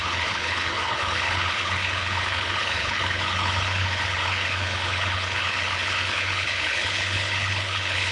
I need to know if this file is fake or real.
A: fake